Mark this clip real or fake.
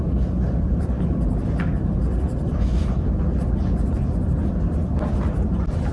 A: real